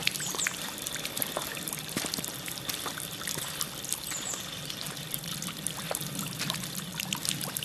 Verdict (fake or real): fake